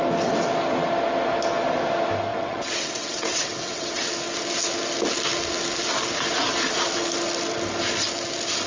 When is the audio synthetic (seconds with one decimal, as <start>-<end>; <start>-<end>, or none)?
2.3-4.1